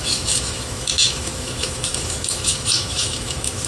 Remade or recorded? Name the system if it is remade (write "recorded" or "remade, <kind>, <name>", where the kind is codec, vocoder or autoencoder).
remade, autoencoder, DAC-VAE